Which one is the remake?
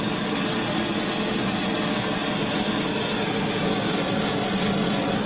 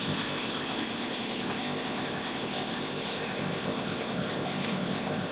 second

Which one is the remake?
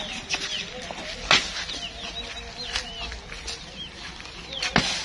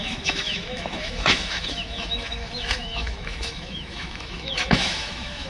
second